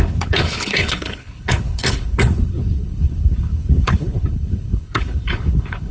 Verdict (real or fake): fake